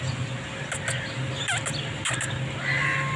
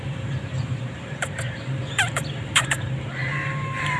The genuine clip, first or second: first